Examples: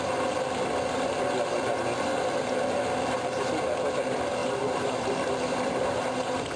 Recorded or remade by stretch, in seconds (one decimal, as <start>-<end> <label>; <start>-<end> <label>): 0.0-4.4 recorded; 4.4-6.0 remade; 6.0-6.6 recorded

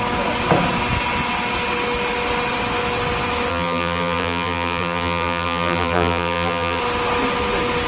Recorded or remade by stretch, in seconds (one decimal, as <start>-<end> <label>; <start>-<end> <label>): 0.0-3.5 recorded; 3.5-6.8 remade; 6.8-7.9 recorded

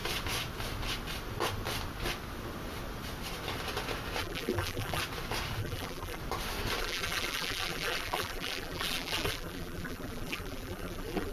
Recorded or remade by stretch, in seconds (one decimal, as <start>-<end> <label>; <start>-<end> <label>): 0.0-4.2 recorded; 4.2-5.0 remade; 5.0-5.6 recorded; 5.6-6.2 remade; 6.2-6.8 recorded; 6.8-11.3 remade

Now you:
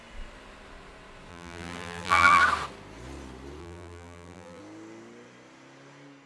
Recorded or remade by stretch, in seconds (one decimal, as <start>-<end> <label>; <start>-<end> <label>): 0.0-1.3 recorded; 1.3-2.4 remade; 2.4-3.6 recorded; 3.6-4.6 remade; 4.6-6.3 recorded